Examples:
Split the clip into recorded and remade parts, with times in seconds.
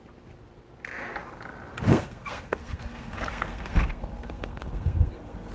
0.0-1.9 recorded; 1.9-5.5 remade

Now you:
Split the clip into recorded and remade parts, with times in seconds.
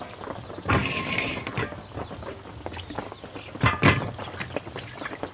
0.0-5.3 recorded